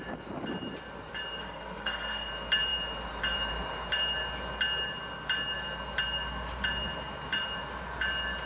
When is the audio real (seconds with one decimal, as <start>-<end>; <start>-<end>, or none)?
0.0-1.4; 2.3-8.5